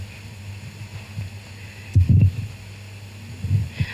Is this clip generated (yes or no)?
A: no